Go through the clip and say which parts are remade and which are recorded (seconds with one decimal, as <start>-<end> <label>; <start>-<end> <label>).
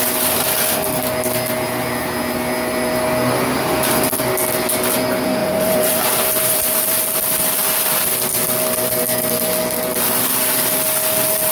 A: 0.0-5.4 recorded; 5.4-7.0 remade; 7.0-11.5 recorded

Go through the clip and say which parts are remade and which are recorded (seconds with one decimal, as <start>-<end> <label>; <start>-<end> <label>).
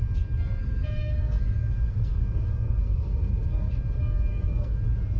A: 0.0-0.6 recorded; 0.6-3.7 remade; 3.7-4.3 recorded; 4.3-4.8 remade; 4.8-5.2 recorded